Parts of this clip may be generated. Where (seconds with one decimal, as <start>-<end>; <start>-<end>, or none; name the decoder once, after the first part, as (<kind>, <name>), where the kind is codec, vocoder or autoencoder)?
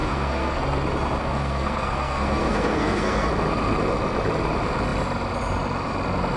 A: 0.0-0.6 (codec, SNAC); 1.2-3.3